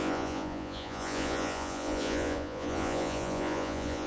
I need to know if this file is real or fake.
fake